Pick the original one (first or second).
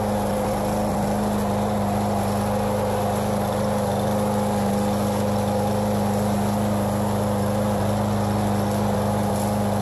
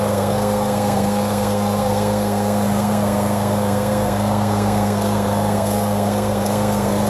first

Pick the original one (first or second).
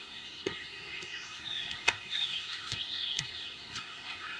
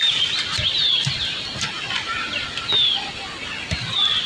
second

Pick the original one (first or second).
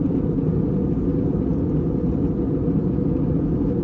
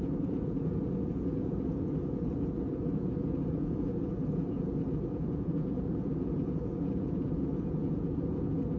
first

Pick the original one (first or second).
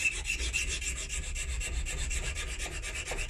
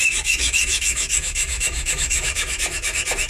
first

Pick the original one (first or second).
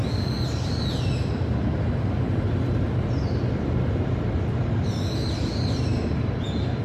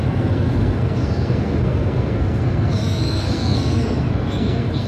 first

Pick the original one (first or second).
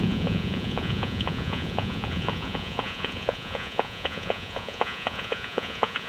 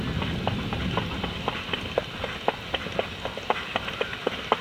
second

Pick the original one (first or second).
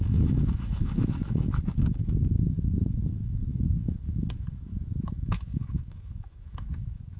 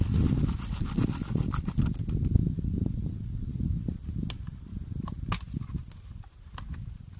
second